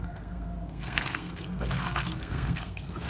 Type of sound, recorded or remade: remade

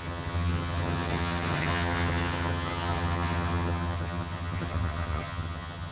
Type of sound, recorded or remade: remade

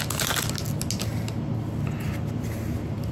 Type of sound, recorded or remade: recorded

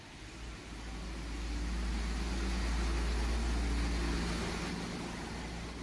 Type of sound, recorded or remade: recorded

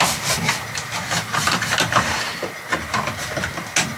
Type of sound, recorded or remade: recorded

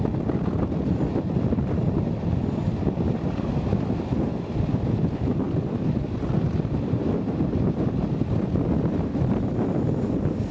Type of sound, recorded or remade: recorded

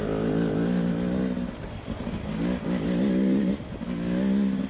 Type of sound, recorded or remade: recorded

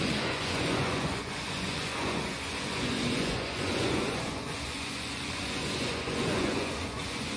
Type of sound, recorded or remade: remade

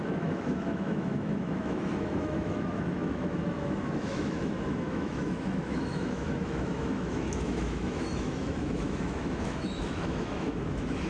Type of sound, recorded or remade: remade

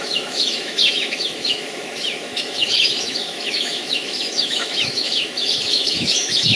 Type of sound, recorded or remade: remade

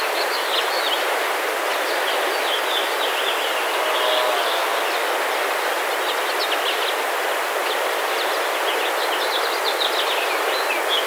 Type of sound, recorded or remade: recorded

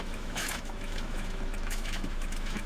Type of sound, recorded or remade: remade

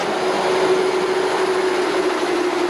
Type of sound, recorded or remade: recorded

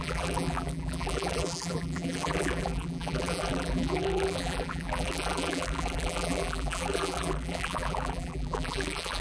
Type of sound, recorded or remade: remade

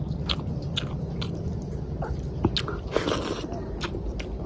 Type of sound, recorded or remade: recorded